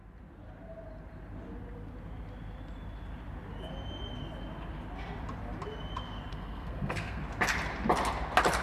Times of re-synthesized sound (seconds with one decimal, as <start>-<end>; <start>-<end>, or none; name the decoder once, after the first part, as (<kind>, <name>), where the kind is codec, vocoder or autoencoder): 6.3-7.2 (codec, SNAC)